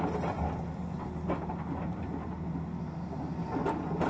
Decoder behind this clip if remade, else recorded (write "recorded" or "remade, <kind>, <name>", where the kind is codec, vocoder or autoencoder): recorded